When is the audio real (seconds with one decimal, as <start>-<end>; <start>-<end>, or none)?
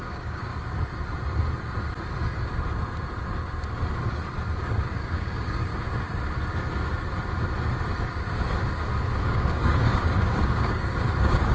0.5-4.6; 5.7-9.2